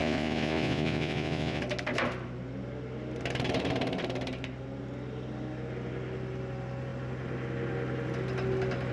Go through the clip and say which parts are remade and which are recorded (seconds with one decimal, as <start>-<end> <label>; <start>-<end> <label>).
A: 0.0-1.6 remade; 1.6-8.9 recorded